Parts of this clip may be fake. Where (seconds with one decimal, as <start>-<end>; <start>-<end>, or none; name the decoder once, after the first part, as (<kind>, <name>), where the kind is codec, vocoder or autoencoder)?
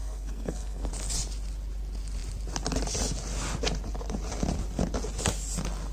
0.0-0.9 (codec, SNAC)